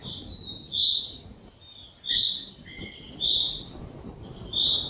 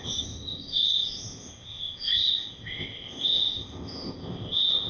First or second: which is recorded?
first